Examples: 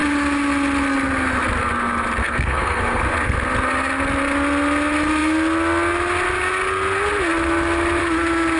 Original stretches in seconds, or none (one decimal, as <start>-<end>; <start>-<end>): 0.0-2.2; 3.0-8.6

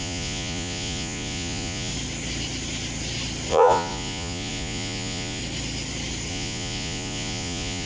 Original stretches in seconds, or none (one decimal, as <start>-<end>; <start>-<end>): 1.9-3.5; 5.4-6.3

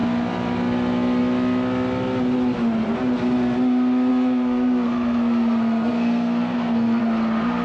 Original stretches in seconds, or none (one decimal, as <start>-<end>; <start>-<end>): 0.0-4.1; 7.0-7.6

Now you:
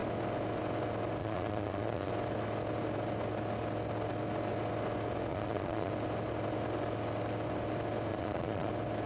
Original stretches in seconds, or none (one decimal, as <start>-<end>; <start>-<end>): 0.0-1.2; 2.1-5.3; 5.9-8.1; 8.7-9.1

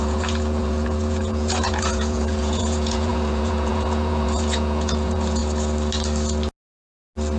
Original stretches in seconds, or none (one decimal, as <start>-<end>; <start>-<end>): 5.4-7.4

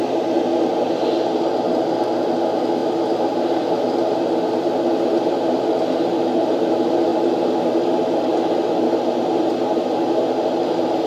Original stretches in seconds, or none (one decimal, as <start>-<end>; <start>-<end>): 0.0-11.1